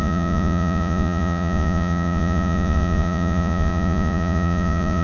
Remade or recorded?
remade